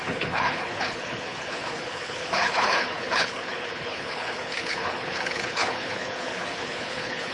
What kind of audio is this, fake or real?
fake